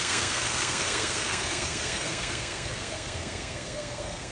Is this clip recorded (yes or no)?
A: no